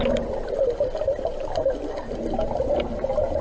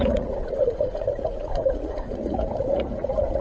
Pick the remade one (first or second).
second